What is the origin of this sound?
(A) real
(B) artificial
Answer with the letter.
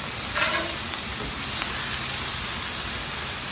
A